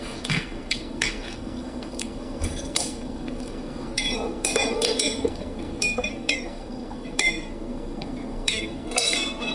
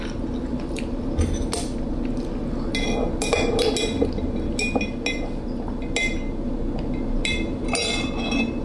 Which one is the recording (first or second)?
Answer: second